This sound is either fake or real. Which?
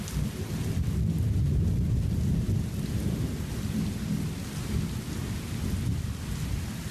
real